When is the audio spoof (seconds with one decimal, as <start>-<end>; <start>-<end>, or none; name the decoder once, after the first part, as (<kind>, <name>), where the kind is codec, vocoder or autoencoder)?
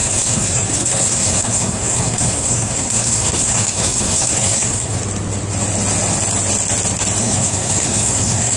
0.0-5.0 (codec, SNAC); 7.2-8.6